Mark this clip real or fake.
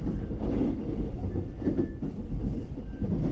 real